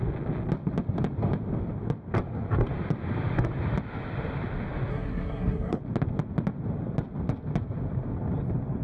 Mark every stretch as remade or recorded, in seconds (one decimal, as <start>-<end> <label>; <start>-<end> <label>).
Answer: 0.0-4.9 recorded; 4.9-5.8 remade; 5.8-8.8 recorded